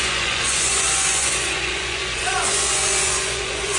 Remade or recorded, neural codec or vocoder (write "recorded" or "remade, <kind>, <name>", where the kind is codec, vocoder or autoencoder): remade, vocoder, Vocos